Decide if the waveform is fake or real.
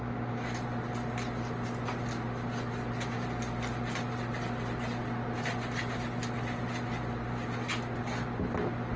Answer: real